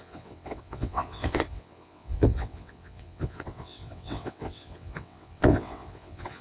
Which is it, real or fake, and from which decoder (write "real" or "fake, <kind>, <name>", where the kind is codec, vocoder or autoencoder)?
fake, vocoder, WaveNeXt